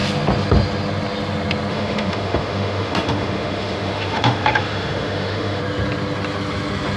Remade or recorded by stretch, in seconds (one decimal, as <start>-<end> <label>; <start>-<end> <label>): 0.0-1.7 recorded; 1.7-5.6 remade; 5.6-7.0 recorded